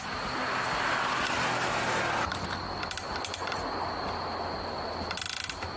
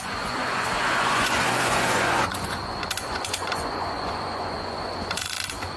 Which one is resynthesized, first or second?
second